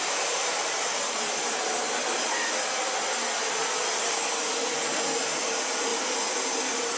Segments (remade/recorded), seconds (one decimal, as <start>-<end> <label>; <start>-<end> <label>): 0.0-2.0 remade; 2.0-5.4 recorded; 5.4-5.9 remade; 5.9-7.0 recorded